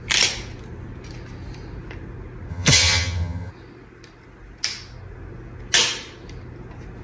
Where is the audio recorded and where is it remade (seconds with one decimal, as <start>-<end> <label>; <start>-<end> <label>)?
0.0-2.5 recorded; 2.5-3.5 remade; 3.5-7.0 recorded